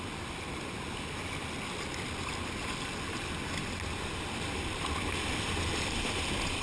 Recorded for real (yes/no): yes